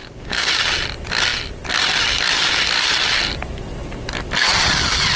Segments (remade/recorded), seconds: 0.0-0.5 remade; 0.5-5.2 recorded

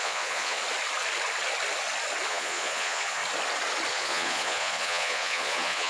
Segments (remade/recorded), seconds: 0.0-0.6 remade; 0.6-2.3 recorded; 2.3-3.2 remade; 3.2-3.9 recorded; 3.9-5.9 remade